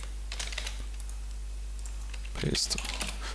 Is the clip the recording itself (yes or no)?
yes